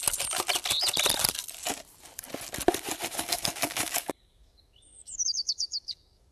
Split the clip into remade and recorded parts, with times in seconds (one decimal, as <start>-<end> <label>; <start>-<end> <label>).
0.0-3.1 recorded; 3.1-6.3 remade

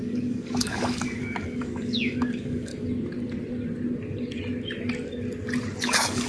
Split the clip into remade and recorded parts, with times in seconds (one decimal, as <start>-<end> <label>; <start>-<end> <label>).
0.0-2.7 remade; 2.7-5.8 recorded; 5.8-6.3 remade

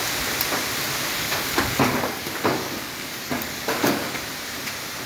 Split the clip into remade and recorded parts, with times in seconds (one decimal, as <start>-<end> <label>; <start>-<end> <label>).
0.0-1.1 recorded; 1.1-4.2 remade; 4.2-5.1 recorded

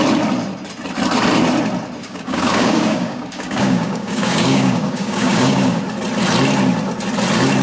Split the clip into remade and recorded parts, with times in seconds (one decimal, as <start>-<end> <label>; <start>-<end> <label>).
0.0-2.0 recorded; 2.0-5.8 remade; 5.8-7.6 recorded